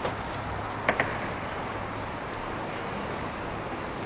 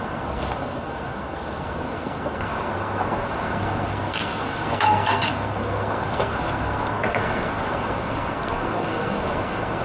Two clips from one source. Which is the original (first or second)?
first